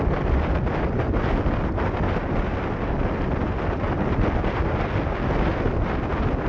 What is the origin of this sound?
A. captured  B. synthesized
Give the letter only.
A